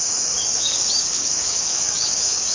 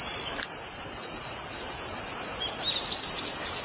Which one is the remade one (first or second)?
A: first